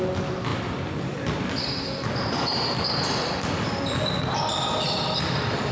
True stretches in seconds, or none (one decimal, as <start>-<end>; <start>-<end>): 0.0-5.7